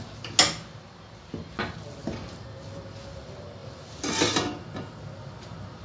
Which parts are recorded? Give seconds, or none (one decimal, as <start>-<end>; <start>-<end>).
0.0-5.8